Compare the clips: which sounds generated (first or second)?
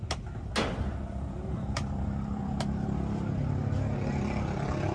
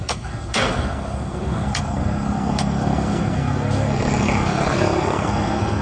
second